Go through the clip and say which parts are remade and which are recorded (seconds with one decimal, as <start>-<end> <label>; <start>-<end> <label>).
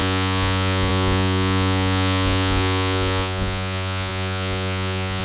0.0-5.2 remade